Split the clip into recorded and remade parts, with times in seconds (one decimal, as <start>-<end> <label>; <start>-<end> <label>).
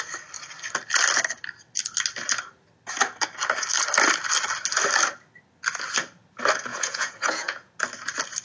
0.0-6.7 recorded; 6.7-7.7 remade; 7.7-8.4 recorded